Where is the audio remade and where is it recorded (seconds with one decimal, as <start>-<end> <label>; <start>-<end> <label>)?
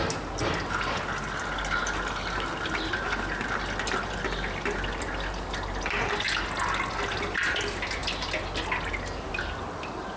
0.0-10.2 recorded